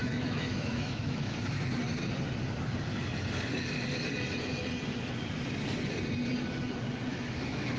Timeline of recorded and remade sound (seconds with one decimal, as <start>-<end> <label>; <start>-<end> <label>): 0.0-1.8 remade; 1.8-7.1 recorded; 7.1-7.8 remade